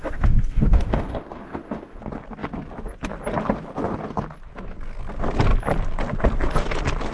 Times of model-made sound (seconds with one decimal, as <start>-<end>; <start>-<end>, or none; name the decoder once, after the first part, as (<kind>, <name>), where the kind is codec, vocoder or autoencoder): 0.0-2.0 (autoencoder, DAC-VAE)